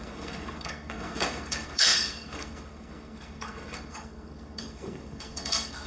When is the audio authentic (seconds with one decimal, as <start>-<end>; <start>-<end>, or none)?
none